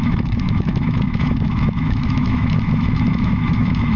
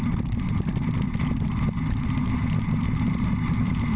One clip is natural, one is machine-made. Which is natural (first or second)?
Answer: second